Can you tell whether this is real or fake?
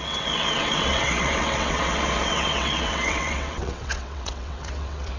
fake